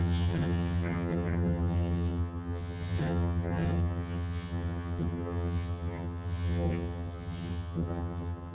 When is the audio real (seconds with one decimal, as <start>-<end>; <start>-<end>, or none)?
none